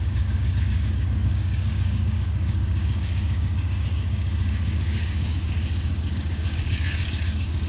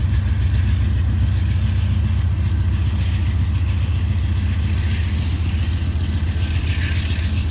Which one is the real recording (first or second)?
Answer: second